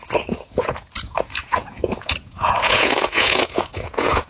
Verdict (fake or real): fake